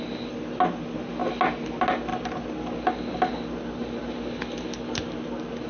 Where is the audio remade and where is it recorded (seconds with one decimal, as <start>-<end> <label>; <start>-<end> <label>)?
0.0-5.7 recorded